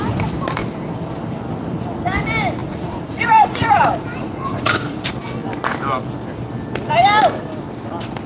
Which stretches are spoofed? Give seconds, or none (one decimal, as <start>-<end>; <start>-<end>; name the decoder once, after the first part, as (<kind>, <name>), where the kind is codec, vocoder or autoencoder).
2.6-5.0 (vocoder, Vocos)